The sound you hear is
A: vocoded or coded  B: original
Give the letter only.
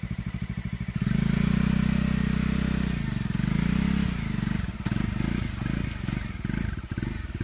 B